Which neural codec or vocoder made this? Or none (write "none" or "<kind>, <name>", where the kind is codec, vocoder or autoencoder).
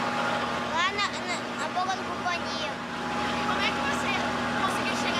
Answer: none